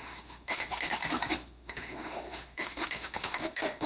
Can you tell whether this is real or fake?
fake